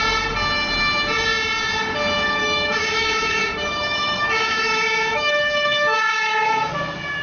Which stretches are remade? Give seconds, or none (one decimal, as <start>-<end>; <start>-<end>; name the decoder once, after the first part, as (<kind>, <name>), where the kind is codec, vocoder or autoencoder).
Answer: 2.4-6.7 (autoencoder, DAC-VAE)